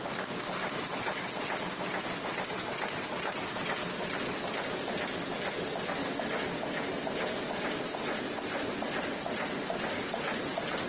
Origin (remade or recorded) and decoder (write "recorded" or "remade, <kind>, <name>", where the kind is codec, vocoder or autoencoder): recorded